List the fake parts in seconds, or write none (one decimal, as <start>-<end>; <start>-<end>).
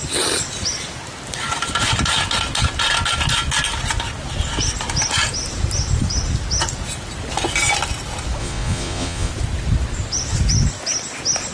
8.4-9.3